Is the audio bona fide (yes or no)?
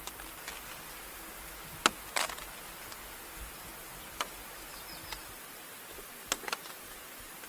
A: yes